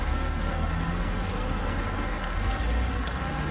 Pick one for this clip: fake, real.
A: fake